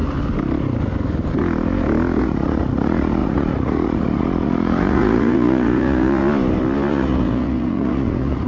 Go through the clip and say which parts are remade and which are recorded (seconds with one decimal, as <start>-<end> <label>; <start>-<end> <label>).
0.0-2.2 recorded; 2.2-6.2 remade; 6.2-6.9 recorded; 6.9-8.5 remade